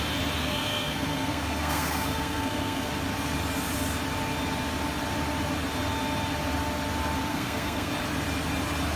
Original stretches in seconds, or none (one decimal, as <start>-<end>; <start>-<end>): 0.0-0.4; 2.9-7.3; 7.9-9.0